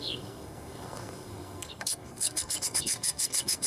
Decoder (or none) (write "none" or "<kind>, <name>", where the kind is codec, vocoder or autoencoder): codec, SNAC